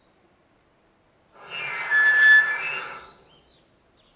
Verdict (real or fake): real